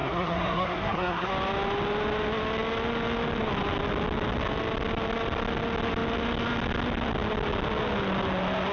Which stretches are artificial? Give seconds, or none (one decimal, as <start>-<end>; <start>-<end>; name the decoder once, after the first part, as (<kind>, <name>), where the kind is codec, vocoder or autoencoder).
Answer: 0.0-1.3 (codec, SNAC)